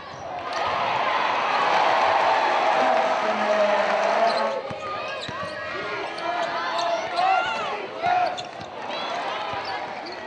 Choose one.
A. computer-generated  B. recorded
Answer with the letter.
B